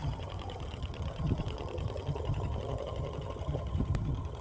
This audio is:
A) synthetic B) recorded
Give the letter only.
A